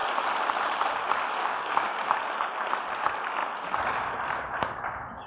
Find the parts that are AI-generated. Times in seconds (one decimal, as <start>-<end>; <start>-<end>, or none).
1.4-2.2